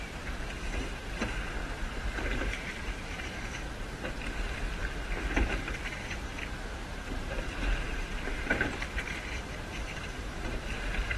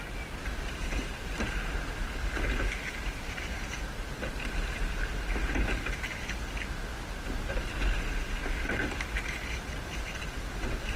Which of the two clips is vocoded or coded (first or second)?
first